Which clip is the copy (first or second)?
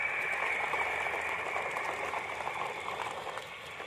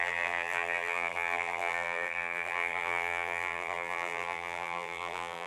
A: second